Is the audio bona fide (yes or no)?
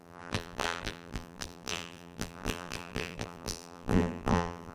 no